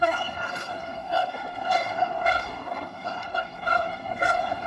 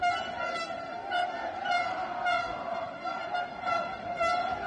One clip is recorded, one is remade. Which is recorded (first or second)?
second